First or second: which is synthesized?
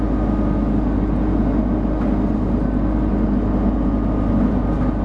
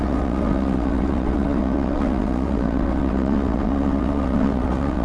second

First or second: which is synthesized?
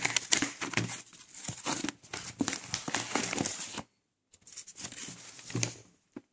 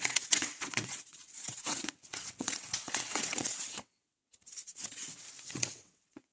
second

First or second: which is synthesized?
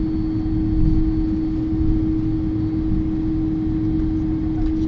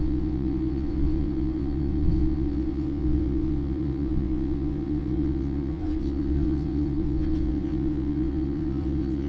second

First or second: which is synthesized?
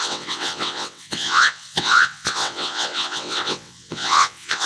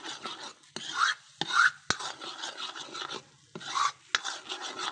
first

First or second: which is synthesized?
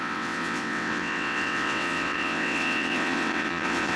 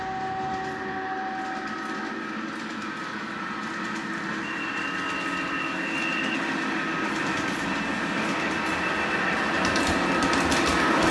first